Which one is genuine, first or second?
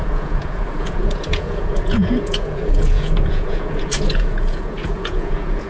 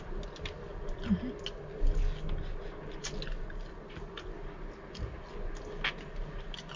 second